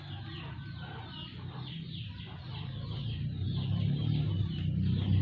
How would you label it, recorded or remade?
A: recorded